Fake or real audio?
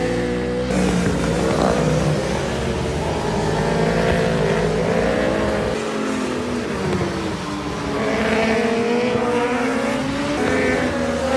real